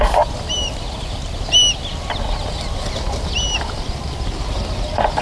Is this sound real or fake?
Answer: real